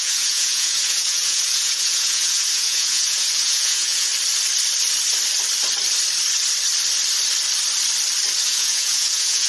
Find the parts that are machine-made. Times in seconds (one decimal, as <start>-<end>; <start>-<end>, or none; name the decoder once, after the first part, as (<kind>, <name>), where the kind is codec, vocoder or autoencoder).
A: 0.0-4.1 (vocoder, Vocos); 8.4-9.5